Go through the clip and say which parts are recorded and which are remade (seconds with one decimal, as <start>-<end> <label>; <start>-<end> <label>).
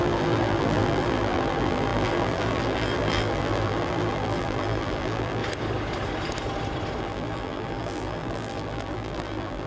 0.0-5.4 remade; 5.4-7.0 recorded; 7.0-9.7 remade